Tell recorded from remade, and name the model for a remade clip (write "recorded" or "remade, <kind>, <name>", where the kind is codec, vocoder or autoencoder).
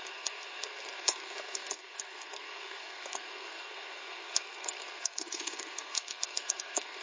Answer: remade, codec, SNAC